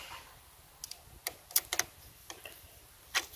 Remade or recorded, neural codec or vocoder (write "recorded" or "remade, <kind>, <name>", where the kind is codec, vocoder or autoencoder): recorded